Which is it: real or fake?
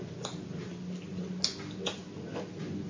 real